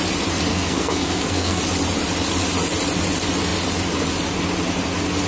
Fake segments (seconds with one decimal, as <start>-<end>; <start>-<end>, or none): 0.5-1.6